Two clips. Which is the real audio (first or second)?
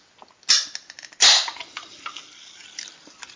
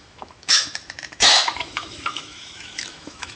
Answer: first